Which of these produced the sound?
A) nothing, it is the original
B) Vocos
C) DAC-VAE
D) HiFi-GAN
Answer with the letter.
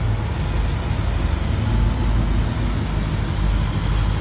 A